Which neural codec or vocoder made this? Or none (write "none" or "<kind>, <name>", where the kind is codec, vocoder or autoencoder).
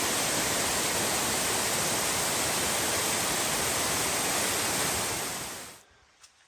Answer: none